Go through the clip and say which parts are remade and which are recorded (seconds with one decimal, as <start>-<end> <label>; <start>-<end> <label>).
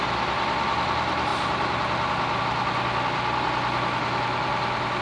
0.0-5.0 recorded